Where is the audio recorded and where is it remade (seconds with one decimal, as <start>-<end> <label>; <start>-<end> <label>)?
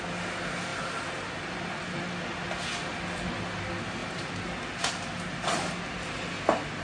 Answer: 0.0-6.8 recorded